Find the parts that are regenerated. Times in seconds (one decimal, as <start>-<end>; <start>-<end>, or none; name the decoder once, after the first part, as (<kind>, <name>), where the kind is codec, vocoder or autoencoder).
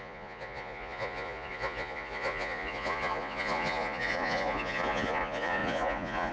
0.0-6.3 (vocoder, Vocos)